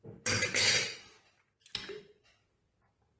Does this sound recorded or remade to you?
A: recorded